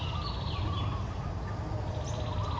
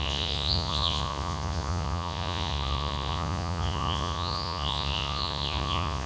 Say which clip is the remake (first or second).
second